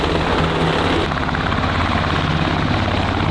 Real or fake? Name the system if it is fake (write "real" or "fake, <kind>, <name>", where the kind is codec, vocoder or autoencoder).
real